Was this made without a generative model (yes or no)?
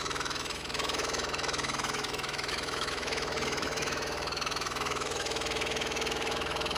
no